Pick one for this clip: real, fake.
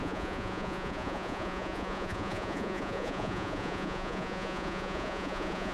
fake